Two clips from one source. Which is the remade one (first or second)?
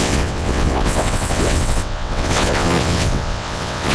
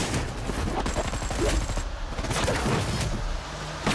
first